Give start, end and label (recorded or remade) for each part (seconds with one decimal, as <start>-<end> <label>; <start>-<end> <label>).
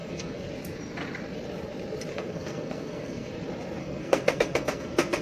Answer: 0.0-0.5 remade; 0.5-2.1 recorded; 2.1-3.3 remade; 3.3-3.8 recorded; 3.8-5.2 remade